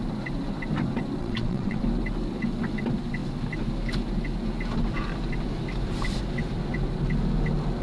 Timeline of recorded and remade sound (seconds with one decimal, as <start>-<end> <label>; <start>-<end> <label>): 0.0-1.2 recorded; 1.2-1.8 remade; 1.8-7.8 recorded